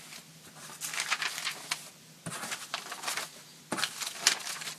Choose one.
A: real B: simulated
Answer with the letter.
A